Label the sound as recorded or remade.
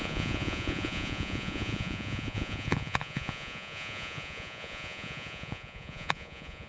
remade